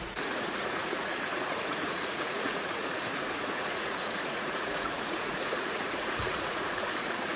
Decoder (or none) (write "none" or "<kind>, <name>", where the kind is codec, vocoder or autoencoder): vocoder, Vocos